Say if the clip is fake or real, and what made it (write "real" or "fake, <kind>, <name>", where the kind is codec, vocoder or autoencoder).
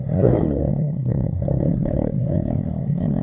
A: fake, codec, SNAC